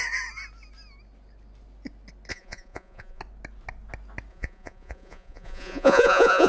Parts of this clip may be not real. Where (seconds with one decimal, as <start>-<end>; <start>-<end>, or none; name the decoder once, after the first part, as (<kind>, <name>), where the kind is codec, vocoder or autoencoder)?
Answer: 2.3-3.2 (vocoder, Vocos); 4.3-6.5

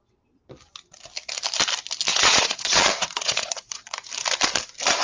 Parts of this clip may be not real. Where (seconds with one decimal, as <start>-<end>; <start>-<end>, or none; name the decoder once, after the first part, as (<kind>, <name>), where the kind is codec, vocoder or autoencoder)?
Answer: 2.1-4.1 (vocoder, Vocos)

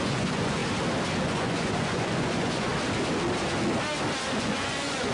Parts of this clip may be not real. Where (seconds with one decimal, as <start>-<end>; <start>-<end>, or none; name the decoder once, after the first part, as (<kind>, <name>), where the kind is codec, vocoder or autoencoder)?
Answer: 0.0-0.6 (vocoder, Vocos); 1.2-2.7; 4.3-5.1

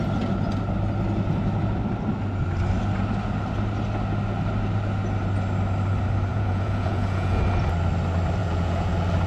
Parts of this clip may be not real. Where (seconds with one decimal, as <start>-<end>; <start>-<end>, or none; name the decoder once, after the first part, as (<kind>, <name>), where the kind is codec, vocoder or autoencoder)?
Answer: 6.3-7.4 (vocoder, Vocos); 8.4-8.9

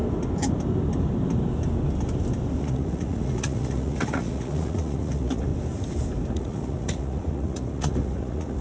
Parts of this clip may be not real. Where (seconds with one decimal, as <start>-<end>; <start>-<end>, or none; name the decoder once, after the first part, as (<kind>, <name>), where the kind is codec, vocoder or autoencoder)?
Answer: 2.6-5.5 (vocoder, Vocos); 6.3-8.6

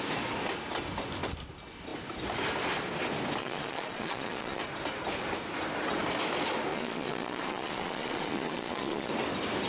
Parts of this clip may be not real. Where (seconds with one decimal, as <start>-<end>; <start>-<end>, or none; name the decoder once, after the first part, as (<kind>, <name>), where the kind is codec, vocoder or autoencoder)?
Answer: 3.4-4.6 (vocoder, Vocos); 6.7-9.1

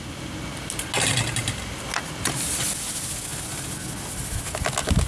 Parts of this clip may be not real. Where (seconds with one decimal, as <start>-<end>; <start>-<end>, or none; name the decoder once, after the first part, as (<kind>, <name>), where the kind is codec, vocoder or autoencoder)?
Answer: none